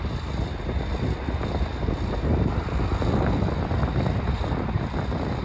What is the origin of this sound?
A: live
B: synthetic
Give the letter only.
A